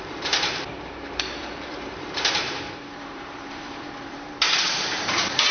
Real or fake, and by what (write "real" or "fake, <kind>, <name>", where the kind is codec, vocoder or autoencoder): fake, vocoder, BigVGAN v2